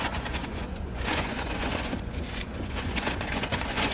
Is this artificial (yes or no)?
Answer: yes